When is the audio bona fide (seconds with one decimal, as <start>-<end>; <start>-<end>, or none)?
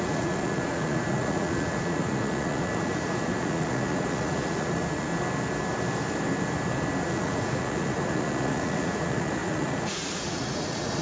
5.1-7.0